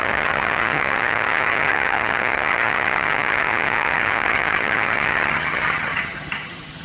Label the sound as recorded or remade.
remade